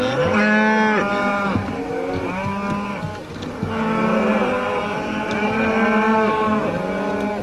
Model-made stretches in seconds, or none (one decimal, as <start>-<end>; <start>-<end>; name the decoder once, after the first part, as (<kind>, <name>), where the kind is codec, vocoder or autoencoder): 1.3-2.2 (vocoder, BigVGAN v2); 4.3-6.5

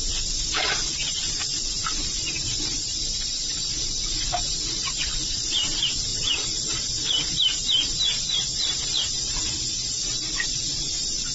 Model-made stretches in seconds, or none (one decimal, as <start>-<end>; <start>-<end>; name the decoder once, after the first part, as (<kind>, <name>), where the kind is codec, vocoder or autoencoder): 0.6-3.5 (vocoder, BigVGAN v2); 4.2-11.3

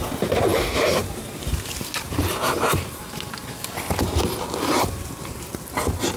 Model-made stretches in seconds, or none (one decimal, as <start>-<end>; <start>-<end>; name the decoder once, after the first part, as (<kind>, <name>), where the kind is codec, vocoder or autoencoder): 0.5-3.0 (vocoder, BigVGAN v2)

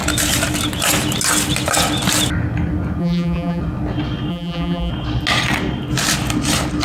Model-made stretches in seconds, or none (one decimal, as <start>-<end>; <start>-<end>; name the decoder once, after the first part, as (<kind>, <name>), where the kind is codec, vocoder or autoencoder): 3.0-3.6 (vocoder, BigVGAN v2); 4.3-4.9

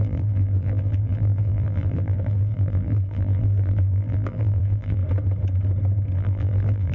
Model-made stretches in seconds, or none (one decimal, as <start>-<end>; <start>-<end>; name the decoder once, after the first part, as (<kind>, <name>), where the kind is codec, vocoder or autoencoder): 0.0-5.0 (vocoder, BigVGAN v2); 6.2-6.9